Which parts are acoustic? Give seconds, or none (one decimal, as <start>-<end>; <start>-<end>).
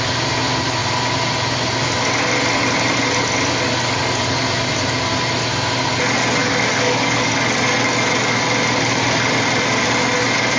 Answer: 0.0-6.4; 7.3-10.6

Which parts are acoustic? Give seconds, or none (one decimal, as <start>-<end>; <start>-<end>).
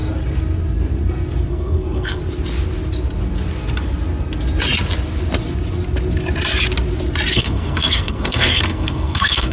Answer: 0.0-1.5; 2.2-7.3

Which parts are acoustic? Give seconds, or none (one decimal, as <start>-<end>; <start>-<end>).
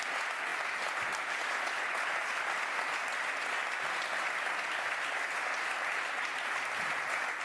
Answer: 0.0-7.4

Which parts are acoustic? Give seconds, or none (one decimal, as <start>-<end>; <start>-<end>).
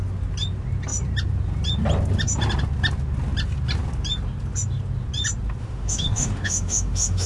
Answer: 0.0-5.6